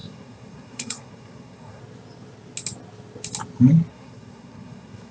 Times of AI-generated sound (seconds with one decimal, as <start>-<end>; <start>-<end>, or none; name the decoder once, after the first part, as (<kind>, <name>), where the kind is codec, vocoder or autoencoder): 0.0-1.8 (codec, SNAC); 3.9-5.1